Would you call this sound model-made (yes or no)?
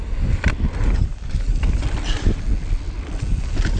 no